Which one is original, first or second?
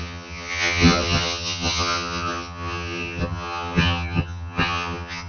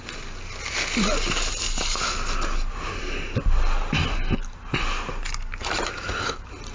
second